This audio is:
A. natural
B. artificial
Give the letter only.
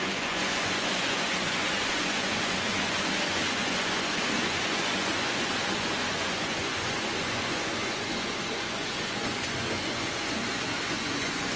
B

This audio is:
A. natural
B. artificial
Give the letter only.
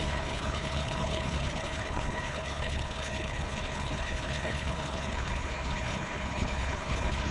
B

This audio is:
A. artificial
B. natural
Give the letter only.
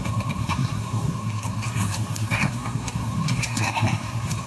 A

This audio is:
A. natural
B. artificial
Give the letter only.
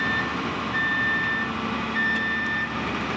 A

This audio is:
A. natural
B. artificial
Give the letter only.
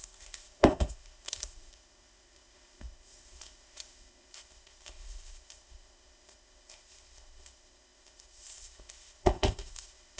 B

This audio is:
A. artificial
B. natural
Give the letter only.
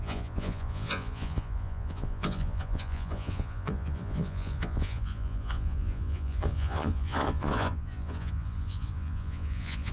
A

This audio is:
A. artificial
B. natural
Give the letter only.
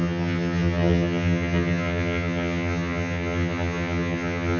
A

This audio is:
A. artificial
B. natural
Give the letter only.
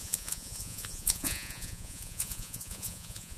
A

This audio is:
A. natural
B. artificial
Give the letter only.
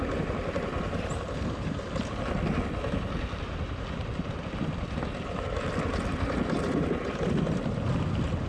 A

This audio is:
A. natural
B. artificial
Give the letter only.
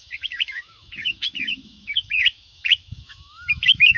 B